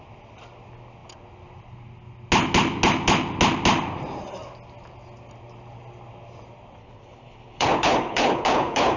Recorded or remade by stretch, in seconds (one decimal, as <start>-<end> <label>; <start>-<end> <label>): 0.0-6.8 recorded; 6.8-9.0 remade